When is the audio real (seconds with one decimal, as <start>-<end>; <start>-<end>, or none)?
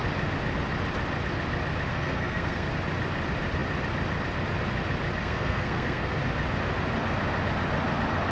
0.0-1.9; 2.7-5.2; 6.2-8.3